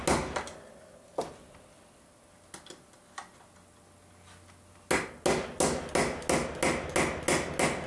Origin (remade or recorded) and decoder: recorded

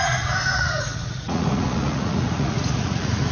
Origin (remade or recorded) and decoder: remade, vocoder, Vocos